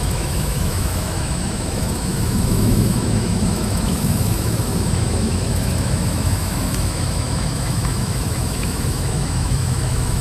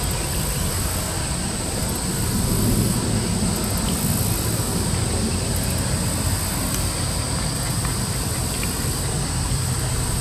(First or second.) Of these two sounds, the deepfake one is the first